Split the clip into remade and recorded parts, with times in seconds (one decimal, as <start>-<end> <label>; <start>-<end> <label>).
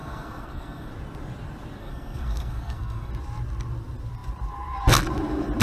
0.0-0.9 remade; 0.9-1.8 recorded; 1.8-3.1 remade; 3.1-5.6 recorded